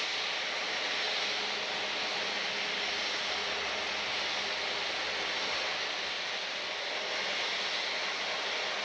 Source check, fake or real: real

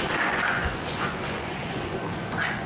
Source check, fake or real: fake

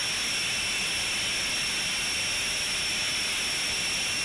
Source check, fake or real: real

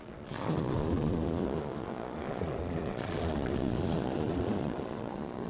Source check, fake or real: fake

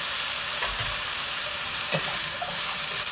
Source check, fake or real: fake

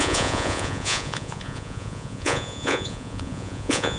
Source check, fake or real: fake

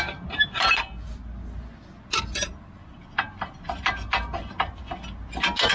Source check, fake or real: real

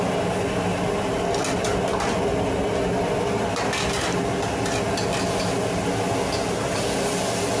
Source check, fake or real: real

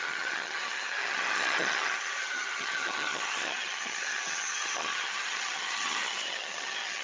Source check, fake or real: fake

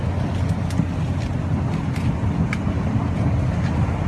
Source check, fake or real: real